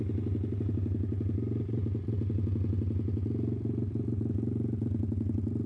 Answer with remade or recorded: recorded